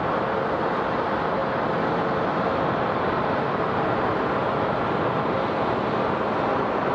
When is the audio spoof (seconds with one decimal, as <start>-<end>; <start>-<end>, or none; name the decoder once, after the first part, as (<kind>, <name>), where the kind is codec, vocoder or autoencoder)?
none